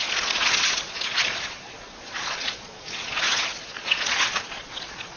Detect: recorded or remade remade